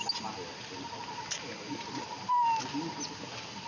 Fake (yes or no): no